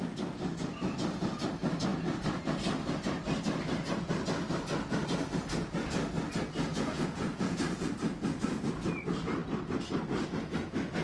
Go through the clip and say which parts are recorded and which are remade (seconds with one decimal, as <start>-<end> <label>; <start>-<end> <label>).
0.0-6.7 recorded; 6.7-7.6 remade; 7.6-11.0 recorded

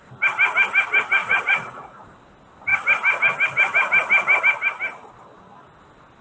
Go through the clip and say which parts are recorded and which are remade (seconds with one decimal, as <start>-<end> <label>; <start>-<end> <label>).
0.0-1.2 recorded; 1.2-2.0 remade; 2.0-6.2 recorded

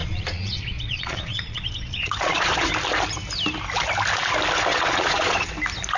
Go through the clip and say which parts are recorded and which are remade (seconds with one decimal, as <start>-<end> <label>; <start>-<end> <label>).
0.0-2.7 remade; 2.7-4.7 recorded; 4.7-5.5 remade; 5.5-6.0 recorded

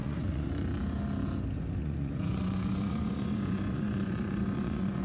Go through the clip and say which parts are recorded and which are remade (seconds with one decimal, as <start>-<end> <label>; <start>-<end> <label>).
0.0-0.5 remade; 0.5-1.8 recorded; 1.8-5.0 remade

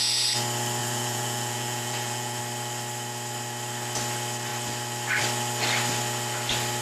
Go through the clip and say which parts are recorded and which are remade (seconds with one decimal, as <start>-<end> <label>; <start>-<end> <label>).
0.0-0.8 recorded; 0.8-2.4 remade; 2.4-6.8 recorded

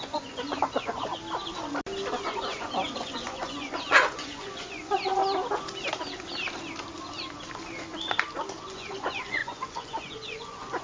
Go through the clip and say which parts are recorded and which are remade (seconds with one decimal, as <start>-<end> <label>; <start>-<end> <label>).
0.0-1.1 remade; 1.1-2.2 recorded; 2.2-5.2 remade; 5.2-8.6 recorded; 8.6-10.8 remade

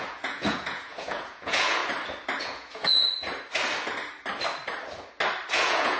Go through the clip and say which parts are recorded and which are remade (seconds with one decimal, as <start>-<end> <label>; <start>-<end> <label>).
0.0-1.8 remade; 1.8-2.4 recorded; 2.4-2.9 remade; 2.9-5.5 recorded; 5.5-6.0 remade

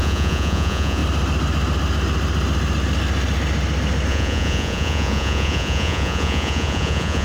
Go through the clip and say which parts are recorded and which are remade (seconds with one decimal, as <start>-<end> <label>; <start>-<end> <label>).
0.0-1.0 remade; 1.0-4.1 recorded; 4.1-7.2 remade